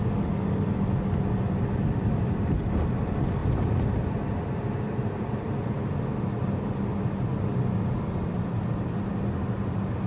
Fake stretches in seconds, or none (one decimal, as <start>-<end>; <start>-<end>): none